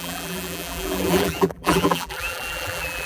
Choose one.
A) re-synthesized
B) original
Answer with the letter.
A